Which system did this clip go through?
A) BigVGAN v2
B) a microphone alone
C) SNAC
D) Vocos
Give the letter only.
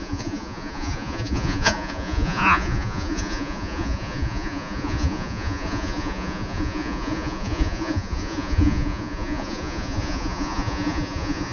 D